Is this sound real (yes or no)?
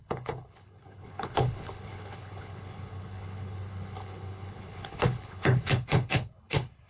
no